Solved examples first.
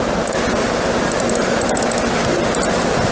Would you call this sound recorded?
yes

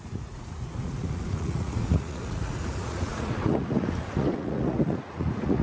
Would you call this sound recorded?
no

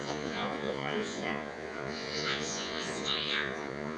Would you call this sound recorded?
no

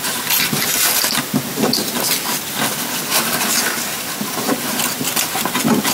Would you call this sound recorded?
yes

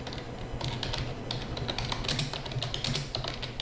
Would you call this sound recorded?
yes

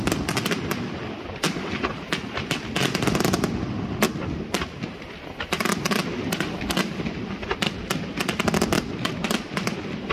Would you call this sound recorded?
yes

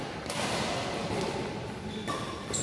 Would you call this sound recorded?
yes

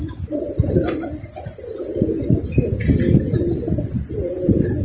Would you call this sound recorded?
yes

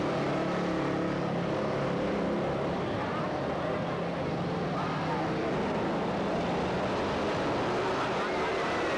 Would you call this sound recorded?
yes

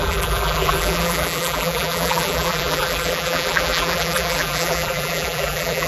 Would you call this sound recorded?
no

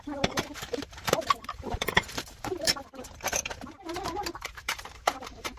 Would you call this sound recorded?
no